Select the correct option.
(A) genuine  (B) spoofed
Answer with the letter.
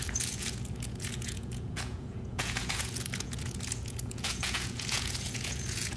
B